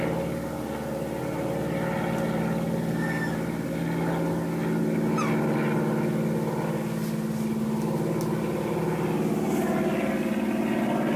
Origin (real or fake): real